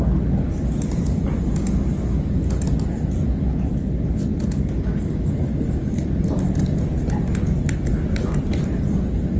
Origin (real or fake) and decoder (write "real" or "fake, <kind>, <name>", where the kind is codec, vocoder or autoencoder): real